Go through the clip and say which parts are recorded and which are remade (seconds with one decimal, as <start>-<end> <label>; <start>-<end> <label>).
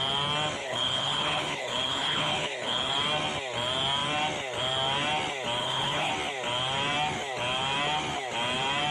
0.0-0.6 recorded; 0.6-2.9 remade; 2.9-5.6 recorded; 5.6-6.1 remade; 6.1-8.9 recorded